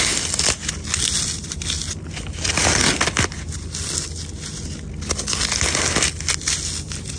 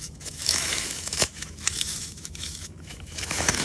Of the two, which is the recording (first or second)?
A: first